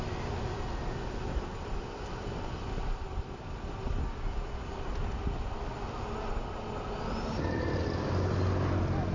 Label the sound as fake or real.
real